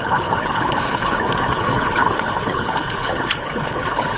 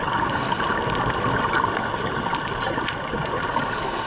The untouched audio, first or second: second